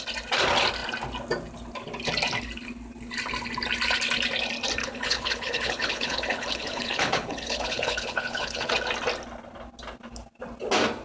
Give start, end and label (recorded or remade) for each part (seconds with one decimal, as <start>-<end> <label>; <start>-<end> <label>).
0.0-4.8 recorded; 4.8-8.7 remade; 8.7-11.0 recorded